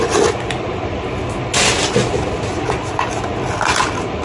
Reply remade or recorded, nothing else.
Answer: recorded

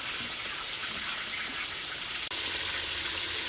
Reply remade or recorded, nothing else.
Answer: recorded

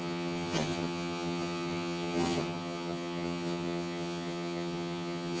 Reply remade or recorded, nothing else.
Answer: remade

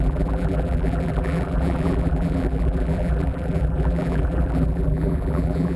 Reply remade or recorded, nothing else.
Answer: remade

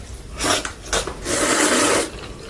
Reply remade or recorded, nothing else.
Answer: recorded